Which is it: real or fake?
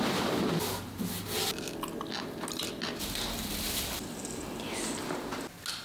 real